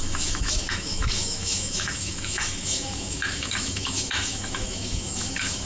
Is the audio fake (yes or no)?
yes